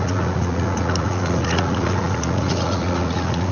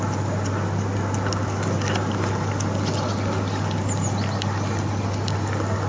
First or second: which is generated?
first